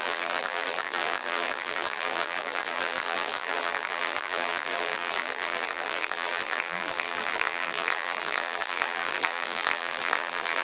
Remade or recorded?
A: remade